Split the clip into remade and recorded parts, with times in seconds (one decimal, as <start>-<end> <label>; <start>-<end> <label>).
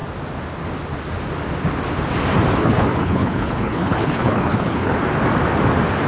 0.0-2.6 recorded; 2.6-5.0 remade; 5.0-6.1 recorded